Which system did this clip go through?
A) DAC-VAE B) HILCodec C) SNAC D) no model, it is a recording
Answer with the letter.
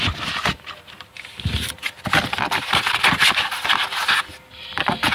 D